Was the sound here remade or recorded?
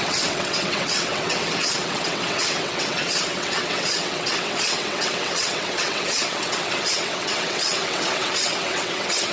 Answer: remade